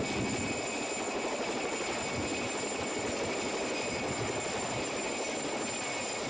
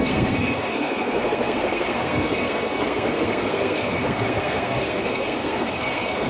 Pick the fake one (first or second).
second